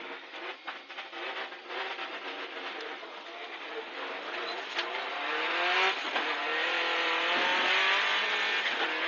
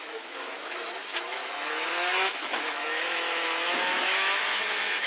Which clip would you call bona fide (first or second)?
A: first